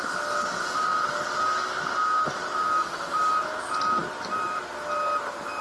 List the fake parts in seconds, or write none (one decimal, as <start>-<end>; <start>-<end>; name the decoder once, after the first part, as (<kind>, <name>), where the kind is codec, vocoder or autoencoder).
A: 4.0-4.7 (vocoder, BigVGAN v2)